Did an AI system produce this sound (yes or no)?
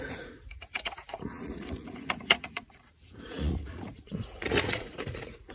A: yes